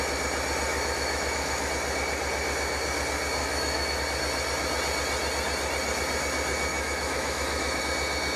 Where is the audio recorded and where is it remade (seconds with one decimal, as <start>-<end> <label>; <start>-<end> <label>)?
0.0-0.7 recorded; 0.7-1.7 remade; 1.7-3.4 recorded; 3.4-4.0 remade; 4.0-6.7 recorded; 6.7-7.8 remade; 7.8-8.4 recorded